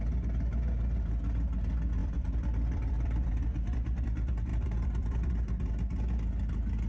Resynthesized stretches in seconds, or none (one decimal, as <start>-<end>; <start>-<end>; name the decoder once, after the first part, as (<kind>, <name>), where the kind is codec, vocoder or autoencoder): 2.0-3.3 (vocoder, BigVGAN v2); 4.5-5.3